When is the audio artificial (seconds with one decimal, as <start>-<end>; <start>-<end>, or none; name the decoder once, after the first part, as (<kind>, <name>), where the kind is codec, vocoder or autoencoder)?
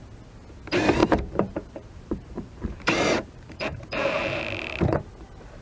1.0-4.4 (vocoder, BigVGAN v2)